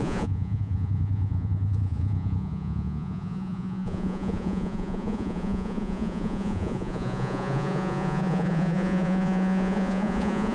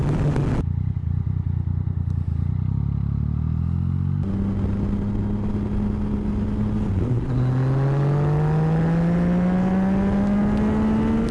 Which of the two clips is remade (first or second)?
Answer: first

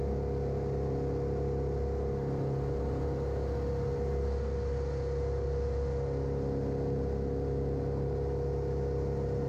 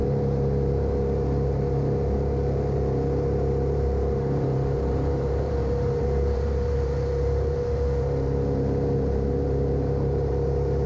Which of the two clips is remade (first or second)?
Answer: second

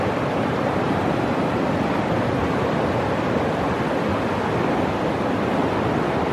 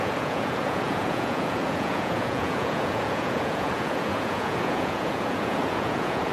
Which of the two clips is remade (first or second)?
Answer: second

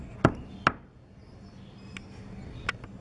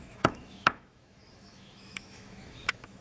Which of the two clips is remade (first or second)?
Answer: second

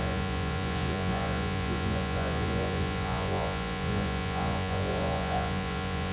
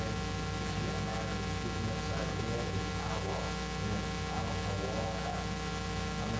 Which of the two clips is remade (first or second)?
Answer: first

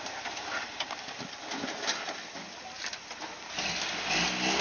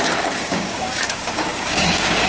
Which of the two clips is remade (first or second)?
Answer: second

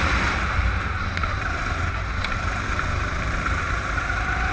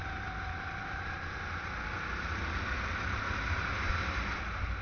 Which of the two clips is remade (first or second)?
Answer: first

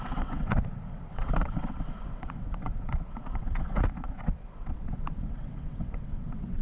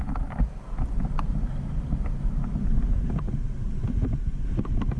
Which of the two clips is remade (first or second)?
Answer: first